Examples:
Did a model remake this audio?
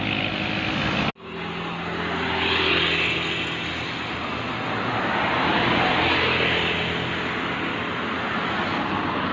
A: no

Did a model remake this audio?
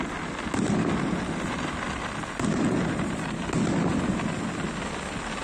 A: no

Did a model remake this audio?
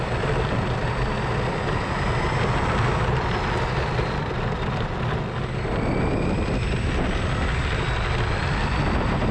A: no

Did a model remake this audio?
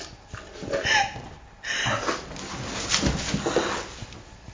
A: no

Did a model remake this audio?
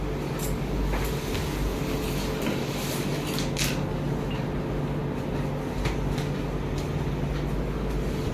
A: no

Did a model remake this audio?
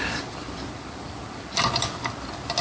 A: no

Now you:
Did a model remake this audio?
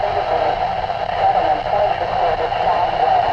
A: no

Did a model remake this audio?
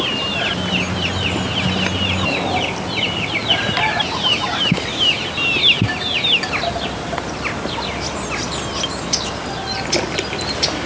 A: no